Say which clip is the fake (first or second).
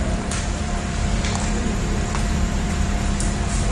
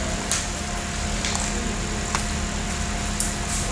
first